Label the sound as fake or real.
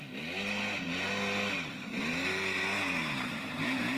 real